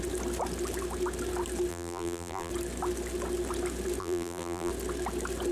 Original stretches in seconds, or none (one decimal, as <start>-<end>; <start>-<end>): 0.0-1.7; 2.5-4.0; 4.7-5.5